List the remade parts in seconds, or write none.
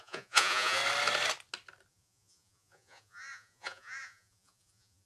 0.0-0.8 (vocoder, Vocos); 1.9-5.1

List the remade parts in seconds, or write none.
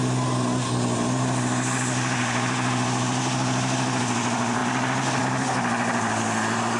none